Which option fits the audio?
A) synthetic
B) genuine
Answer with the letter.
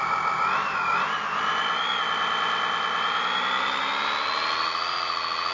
B